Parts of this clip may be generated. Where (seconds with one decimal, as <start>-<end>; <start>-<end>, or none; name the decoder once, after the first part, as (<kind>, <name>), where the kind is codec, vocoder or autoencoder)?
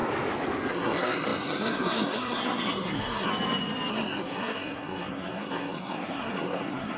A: 0.7-3.3 (codec, SNAC); 3.9-7.0